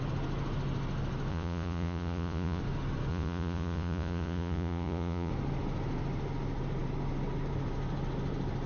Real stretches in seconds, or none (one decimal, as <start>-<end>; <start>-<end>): 0.0-1.3; 2.6-3.1; 5.3-8.7